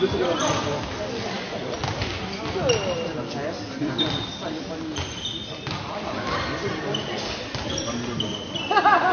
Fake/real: real